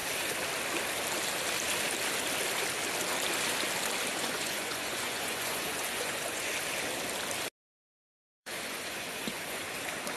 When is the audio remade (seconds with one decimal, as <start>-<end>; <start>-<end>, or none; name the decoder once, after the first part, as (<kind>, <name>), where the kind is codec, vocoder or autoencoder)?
4.1-6.5 (vocoder, Vocos); 8.3-9.6